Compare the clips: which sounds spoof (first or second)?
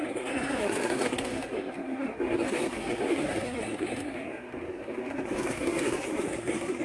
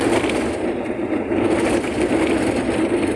first